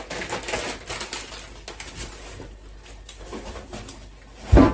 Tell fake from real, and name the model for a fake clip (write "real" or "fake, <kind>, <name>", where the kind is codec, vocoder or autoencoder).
real